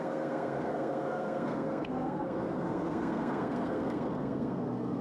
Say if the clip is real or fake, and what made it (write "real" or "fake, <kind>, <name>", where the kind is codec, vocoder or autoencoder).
fake, codec, SNAC